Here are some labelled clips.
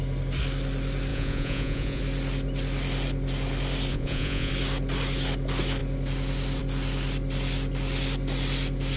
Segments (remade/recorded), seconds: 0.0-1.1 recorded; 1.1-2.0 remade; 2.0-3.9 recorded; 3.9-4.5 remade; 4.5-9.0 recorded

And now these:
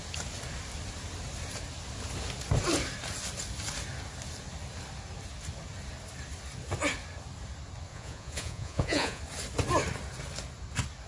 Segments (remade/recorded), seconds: 0.0-7.9 recorded; 7.9-9.2 remade; 9.2-11.1 recorded

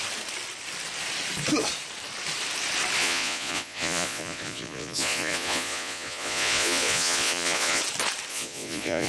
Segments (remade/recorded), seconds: 0.0-3.0 recorded; 3.0-7.8 remade; 7.8-8.3 recorded; 8.3-9.1 remade

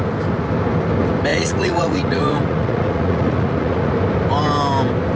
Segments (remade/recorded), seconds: 0.0-1.3 recorded; 1.3-3.9 remade; 3.9-5.2 recorded